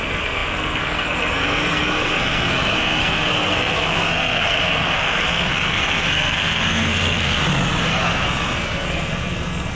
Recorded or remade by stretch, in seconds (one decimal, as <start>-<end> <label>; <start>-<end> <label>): 0.0-7.4 remade; 7.4-7.9 recorded; 7.9-9.8 remade